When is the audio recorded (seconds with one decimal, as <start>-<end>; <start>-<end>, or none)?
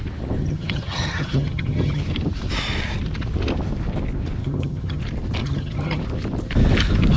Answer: 0.0-0.4; 2.0-4.4; 5.0-5.4; 6.0-7.2